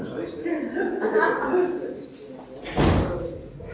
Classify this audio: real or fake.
real